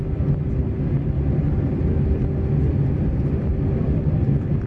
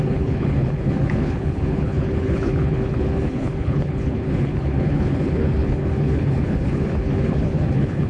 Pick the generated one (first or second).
second